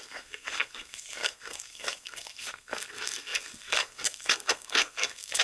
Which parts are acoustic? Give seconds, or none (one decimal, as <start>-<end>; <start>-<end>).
none